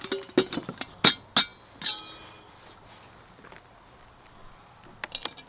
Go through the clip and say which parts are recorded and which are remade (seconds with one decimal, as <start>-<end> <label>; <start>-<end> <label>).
0.0-5.5 recorded